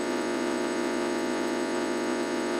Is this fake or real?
fake